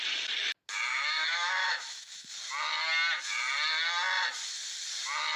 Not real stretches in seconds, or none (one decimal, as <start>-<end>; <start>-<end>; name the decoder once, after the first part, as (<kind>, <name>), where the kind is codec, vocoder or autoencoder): 0.9-2.3 (autoencoder, DAC-VAE)